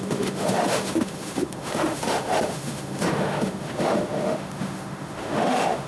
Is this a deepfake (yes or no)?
yes